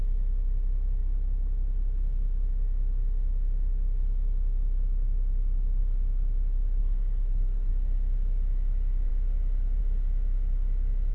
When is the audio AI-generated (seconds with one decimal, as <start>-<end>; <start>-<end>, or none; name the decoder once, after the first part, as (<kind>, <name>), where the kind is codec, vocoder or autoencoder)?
6.8-7.7 (codec, SNAC)